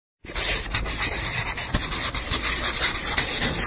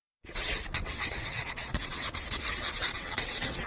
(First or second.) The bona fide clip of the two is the first